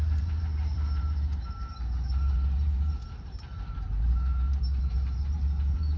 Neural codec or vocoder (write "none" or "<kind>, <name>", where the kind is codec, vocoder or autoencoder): vocoder, BigVGAN v2